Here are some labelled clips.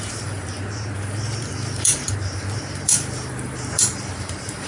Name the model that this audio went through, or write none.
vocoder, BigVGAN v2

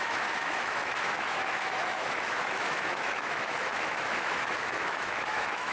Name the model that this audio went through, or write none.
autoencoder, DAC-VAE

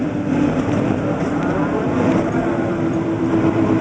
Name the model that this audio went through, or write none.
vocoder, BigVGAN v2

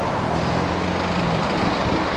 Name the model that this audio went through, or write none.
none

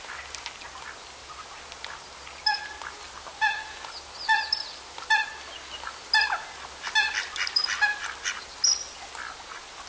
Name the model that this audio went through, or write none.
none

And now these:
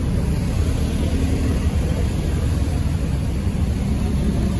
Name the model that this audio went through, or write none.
none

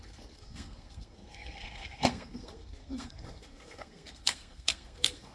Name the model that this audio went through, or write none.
codec, SNAC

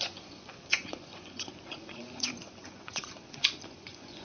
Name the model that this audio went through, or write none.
vocoder, Vocos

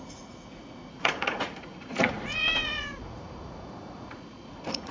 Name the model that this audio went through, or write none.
vocoder, Vocos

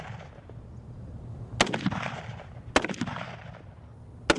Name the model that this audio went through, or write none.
none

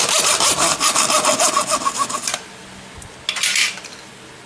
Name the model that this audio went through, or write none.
none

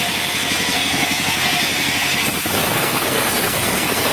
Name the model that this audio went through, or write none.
codec, SNAC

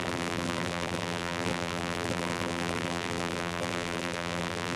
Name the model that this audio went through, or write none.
vocoder, BigVGAN v2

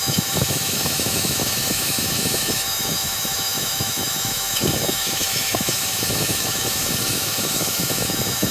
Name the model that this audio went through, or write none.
autoencoder, DAC-VAE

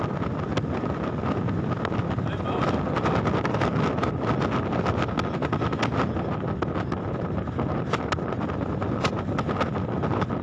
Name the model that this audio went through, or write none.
none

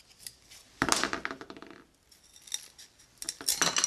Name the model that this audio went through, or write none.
none